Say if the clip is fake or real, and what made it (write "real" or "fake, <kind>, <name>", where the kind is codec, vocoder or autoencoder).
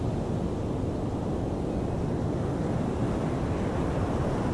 real